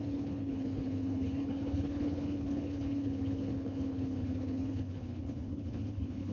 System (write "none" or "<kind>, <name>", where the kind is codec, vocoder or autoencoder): codec, HILCodec